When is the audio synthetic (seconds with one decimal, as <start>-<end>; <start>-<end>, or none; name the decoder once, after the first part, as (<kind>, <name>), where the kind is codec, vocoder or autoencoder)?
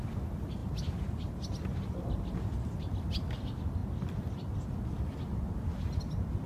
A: none